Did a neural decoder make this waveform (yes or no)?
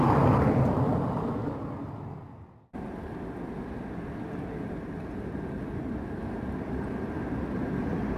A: no